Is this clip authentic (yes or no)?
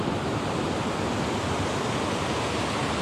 yes